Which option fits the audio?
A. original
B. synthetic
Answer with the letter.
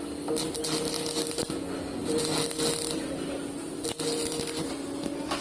A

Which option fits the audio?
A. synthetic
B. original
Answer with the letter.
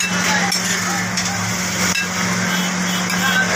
B